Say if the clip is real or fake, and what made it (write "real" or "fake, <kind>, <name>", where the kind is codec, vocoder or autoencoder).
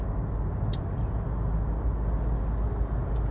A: real